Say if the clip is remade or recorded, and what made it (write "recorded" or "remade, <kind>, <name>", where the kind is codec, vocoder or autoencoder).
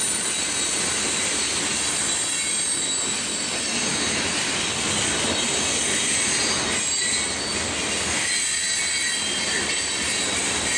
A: recorded